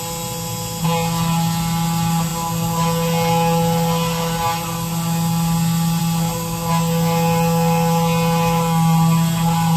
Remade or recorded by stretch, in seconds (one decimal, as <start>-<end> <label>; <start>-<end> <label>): 0.0-9.8 recorded